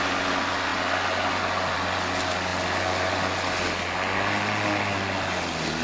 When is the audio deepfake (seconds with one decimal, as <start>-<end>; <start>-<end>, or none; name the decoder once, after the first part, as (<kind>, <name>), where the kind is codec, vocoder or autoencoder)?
none